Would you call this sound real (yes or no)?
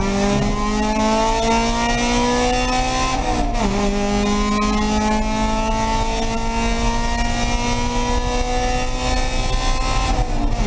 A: yes